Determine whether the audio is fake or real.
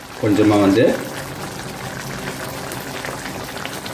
real